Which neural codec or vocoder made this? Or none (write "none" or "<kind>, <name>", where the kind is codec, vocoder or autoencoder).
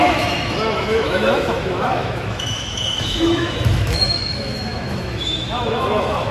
autoencoder, DAC-VAE